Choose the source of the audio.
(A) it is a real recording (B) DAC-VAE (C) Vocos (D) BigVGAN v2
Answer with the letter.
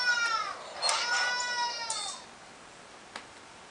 A